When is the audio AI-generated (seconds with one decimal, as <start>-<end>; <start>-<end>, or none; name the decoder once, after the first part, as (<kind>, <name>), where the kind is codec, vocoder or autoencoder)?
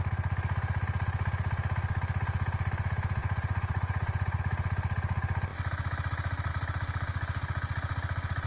3.2-4.4 (vocoder, Vocos)